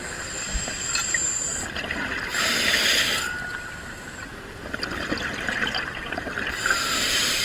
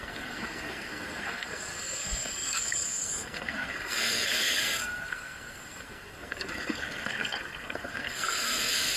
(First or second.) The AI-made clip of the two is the second